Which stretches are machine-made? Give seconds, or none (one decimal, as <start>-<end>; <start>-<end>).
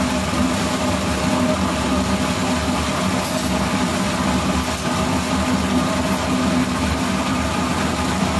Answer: none